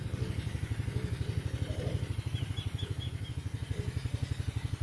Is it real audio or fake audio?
real